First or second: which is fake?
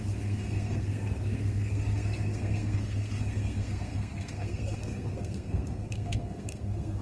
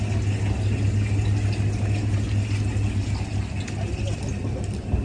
first